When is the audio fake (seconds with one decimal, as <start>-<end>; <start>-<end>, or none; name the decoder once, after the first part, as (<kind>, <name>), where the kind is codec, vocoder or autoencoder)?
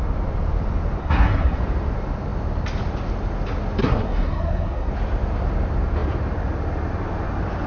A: 1.0-1.6 (codec, SNAC); 3.8-4.9